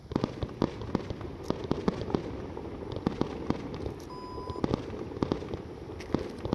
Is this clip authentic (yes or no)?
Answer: yes